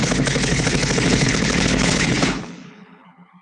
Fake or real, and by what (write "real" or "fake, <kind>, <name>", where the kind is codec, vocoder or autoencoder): fake, codec, HILCodec